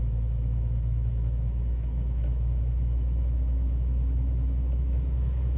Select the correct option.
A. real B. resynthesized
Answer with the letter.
B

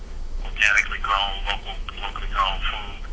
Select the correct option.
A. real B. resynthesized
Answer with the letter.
B